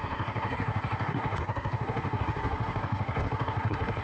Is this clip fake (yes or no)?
yes